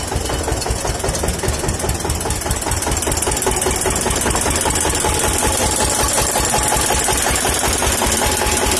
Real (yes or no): yes